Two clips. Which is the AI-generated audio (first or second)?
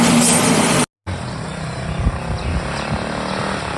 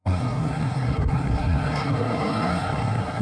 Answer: second